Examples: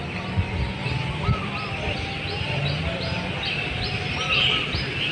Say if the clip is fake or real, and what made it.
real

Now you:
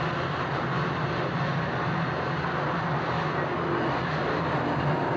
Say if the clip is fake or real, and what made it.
real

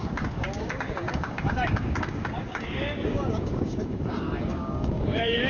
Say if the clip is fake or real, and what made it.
fake, codec, DAC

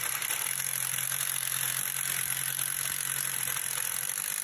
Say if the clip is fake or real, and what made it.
real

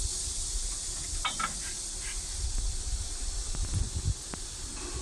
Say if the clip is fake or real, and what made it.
real